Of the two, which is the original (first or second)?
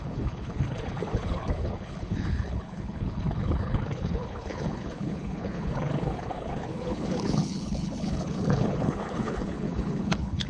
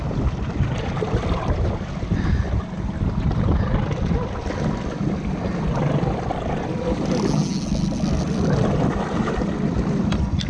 second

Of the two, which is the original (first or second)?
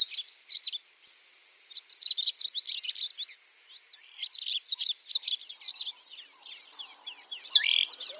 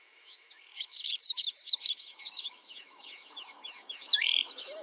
first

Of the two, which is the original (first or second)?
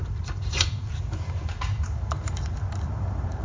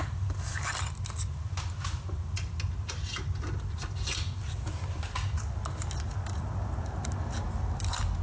second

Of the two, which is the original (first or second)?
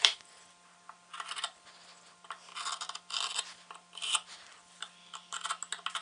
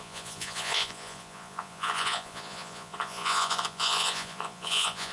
first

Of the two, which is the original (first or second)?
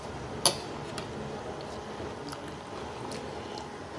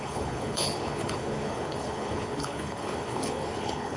first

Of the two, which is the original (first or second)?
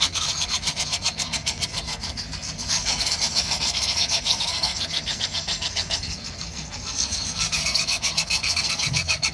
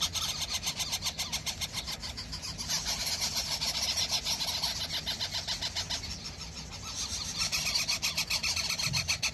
second